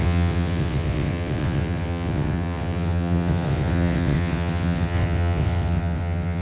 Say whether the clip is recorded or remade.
remade